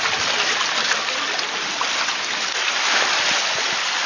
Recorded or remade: recorded